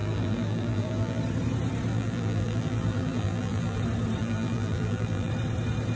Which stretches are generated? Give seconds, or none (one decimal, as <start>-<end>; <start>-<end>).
0.0-1.2; 1.9-3.8; 4.2-5.3